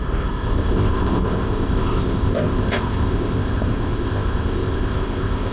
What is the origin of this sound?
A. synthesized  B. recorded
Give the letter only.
A